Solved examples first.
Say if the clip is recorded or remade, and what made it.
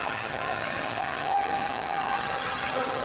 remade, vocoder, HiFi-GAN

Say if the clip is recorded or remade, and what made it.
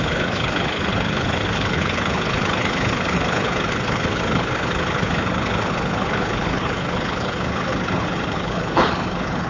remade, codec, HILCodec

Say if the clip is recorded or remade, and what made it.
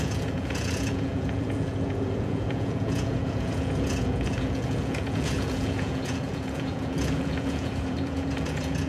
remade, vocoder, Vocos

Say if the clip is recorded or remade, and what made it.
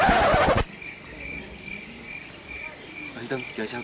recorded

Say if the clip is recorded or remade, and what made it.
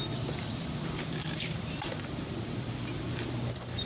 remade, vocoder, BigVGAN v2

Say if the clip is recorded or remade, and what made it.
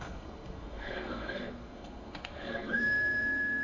remade, codec, SNAC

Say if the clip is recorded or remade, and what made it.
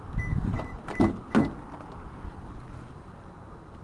recorded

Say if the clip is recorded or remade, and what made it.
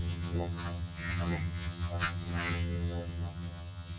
remade, vocoder, HiFi-GAN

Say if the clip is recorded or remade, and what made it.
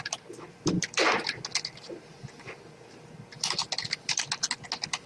recorded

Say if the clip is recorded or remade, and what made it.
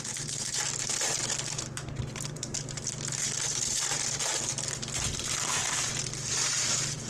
remade, vocoder, BigVGAN v2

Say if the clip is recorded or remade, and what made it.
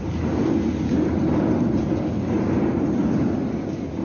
recorded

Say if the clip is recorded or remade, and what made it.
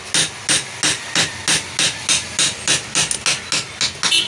recorded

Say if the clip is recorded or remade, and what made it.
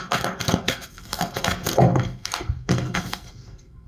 remade, codec, SNAC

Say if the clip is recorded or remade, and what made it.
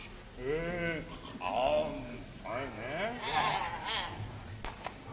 recorded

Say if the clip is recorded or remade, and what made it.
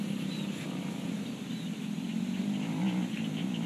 recorded